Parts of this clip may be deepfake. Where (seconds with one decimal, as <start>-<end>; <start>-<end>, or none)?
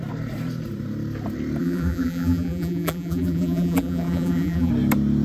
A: 1.6-4.7